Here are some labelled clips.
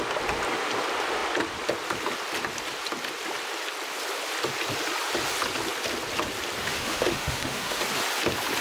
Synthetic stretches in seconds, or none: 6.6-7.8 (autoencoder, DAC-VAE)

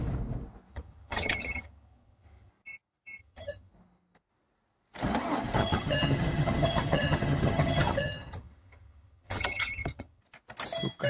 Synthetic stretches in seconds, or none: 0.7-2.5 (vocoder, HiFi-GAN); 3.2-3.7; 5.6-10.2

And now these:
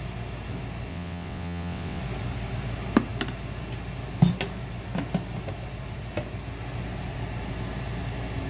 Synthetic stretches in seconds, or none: 0.9-2.0 (vocoder, WaveNeXt)

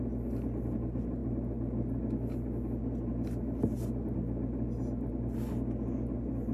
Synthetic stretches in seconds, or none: none

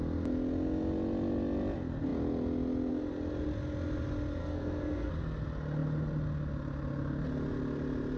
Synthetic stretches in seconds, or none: 4.4-5.1 (codec, SNAC)

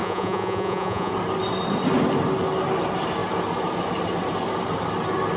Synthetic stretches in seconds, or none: 0.0-1.1 (vocoder, Vocos)

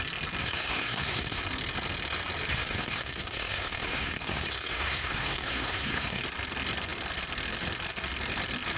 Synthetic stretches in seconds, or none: 0.4-1.4 (codec, SNAC); 2.5-6.2

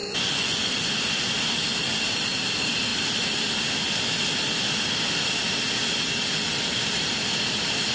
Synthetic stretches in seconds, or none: 0.0-0.7 (vocoder, Vocos)